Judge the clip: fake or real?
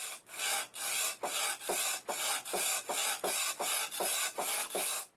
real